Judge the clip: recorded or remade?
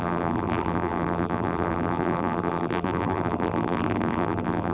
remade